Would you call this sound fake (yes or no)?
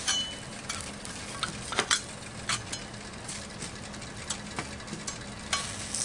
no